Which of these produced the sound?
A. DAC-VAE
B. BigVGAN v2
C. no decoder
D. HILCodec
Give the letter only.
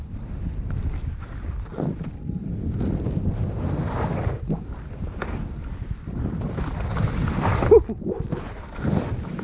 C